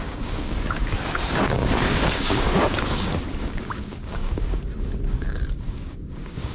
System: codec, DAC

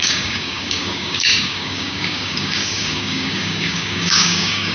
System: codec, DAC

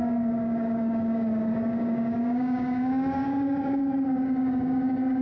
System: codec, DAC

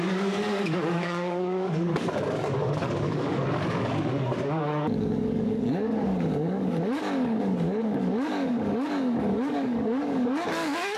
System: codec, DAC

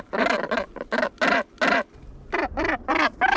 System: none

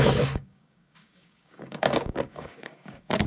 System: codec, DAC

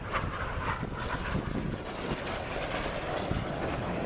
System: none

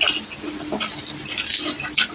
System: none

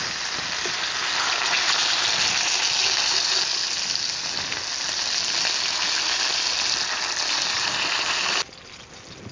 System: none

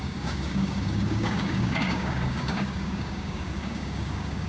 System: codec, DAC